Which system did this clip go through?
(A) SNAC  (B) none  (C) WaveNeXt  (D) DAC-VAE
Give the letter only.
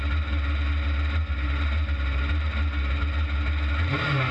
B